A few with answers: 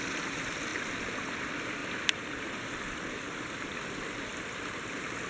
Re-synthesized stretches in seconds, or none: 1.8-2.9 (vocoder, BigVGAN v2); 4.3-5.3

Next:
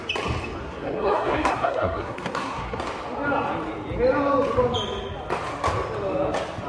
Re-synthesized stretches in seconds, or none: 0.6-2.8 (codec, SNAC)

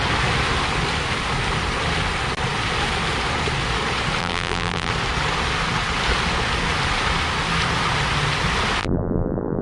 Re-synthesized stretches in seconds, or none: 4.2-4.9 (vocoder, BigVGAN v2); 8.8-9.6

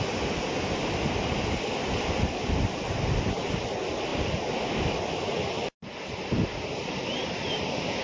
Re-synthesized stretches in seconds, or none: none

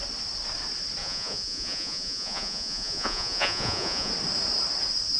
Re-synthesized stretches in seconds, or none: 1.0-4.1 (vocoder, Vocos)

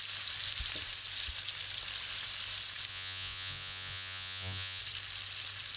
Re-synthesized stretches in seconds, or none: 2.9-4.8 (vocoder, Vocos)

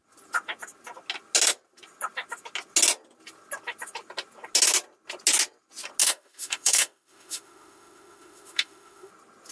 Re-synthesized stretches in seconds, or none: 6.0-9.1 (autoencoder, DAC-VAE)